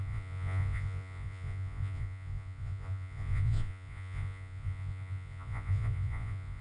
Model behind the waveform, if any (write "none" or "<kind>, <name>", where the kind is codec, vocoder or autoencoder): vocoder, Vocos